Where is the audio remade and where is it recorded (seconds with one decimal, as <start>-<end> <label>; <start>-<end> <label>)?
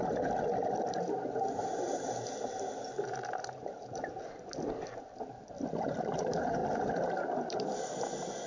0.0-6.6 recorded; 6.6-7.8 remade; 7.8-8.5 recorded